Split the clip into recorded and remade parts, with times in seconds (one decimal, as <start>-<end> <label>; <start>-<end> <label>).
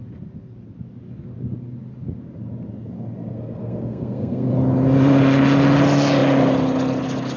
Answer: 0.0-3.3 recorded; 3.3-4.5 remade; 4.5-7.4 recorded